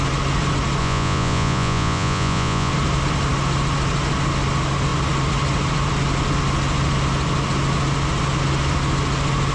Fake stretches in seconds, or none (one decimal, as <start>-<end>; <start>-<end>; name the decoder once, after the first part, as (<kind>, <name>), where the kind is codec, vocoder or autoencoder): 0.8-2.7 (vocoder, Vocos)